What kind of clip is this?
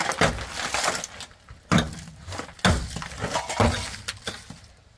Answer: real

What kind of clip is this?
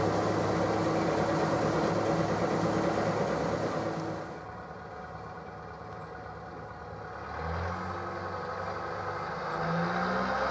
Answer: real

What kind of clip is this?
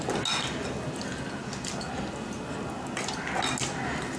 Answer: real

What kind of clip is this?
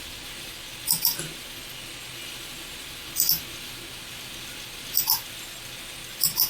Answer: real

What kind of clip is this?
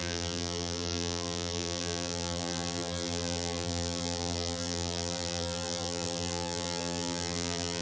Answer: fake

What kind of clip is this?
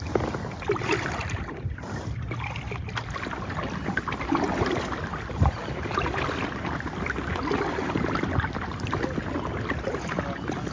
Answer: real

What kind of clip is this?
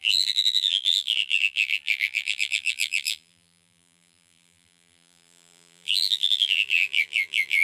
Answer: fake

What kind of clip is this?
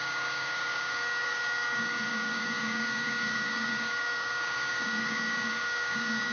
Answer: fake